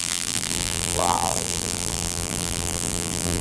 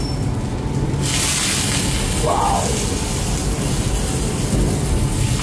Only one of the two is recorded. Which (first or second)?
second